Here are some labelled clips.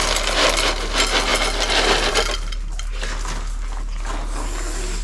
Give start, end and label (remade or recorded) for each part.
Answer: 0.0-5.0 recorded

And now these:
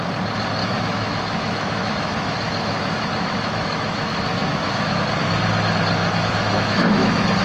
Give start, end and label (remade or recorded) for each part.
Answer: 0.0-0.6 recorded; 0.6-5.0 remade; 5.0-6.0 recorded; 6.0-7.4 remade

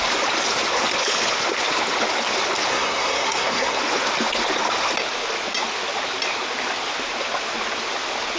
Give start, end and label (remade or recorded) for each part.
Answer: 0.0-2.7 recorded; 2.7-3.8 remade; 3.8-8.4 recorded

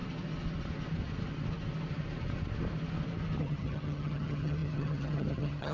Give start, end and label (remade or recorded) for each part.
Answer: 0.0-3.4 recorded; 3.4-5.7 remade

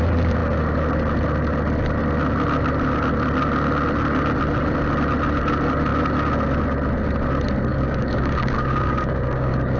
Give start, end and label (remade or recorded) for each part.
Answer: 0.0-7.7 recorded; 7.7-9.8 remade

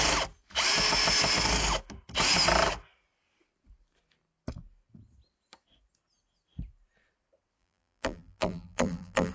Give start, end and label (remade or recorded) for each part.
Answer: 0.0-7.6 recorded; 7.6-9.3 remade